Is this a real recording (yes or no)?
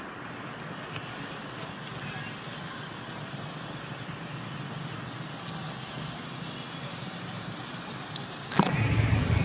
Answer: yes